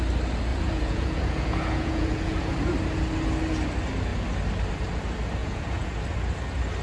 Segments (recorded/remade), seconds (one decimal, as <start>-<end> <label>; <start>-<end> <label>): 0.0-0.5 recorded; 0.5-2.5 remade; 2.5-5.4 recorded; 5.4-6.0 remade; 6.0-6.8 recorded